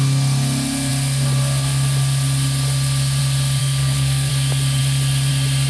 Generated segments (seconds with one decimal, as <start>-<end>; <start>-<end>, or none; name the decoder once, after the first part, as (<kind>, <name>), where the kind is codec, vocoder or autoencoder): 3.6-4.3 (codec, SNAC)

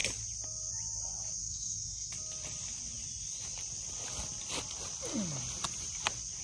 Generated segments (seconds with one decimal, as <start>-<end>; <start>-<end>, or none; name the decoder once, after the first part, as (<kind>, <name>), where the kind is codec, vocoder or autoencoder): 1.4-2.1 (codec, SNAC)

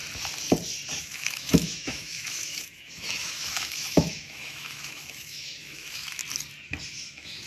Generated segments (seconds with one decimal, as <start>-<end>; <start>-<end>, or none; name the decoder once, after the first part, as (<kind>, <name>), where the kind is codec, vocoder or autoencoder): 1.0-6.2 (autoencoder, DAC-VAE); 7.1-7.5

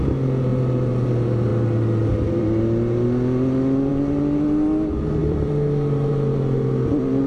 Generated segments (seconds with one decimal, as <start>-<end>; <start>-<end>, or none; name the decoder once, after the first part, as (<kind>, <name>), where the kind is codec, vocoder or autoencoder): 5.2-6.1 (vocoder, BigVGAN v2)

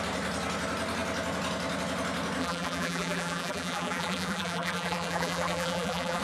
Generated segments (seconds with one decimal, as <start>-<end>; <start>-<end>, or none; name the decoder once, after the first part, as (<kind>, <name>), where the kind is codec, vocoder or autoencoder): 2.4-6.2 (vocoder, BigVGAN v2)

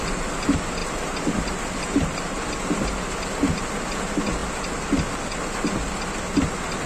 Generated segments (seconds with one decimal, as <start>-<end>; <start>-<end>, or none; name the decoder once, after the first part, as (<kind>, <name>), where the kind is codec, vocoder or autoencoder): none

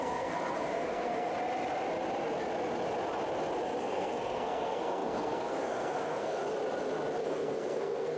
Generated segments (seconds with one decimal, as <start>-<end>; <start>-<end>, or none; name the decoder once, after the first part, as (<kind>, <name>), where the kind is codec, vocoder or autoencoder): 0.0-1.3 (codec, SNAC); 3.8-6.4; 7.2-8.2